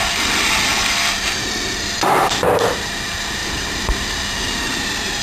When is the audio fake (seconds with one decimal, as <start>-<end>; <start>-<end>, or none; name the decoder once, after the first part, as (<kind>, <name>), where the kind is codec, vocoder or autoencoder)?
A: none